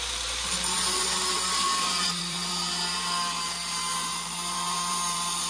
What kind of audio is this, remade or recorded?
remade